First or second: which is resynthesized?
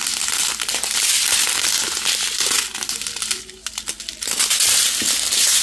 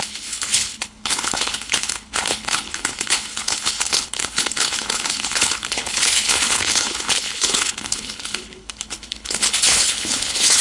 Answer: second